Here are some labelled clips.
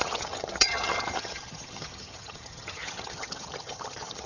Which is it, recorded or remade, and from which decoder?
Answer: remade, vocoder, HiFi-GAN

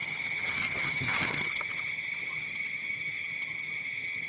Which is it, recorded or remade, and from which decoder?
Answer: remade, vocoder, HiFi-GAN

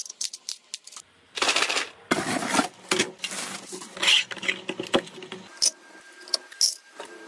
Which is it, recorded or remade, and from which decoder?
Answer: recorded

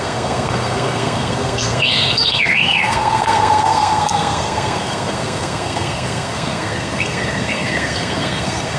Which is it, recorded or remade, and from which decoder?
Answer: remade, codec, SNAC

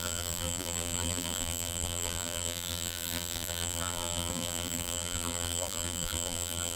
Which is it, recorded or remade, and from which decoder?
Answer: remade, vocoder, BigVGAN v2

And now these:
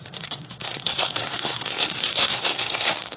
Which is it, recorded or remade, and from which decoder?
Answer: remade, codec, SNAC